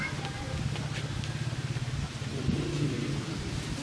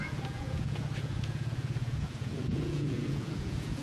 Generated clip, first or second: second